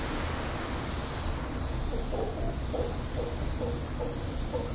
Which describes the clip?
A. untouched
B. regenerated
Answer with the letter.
A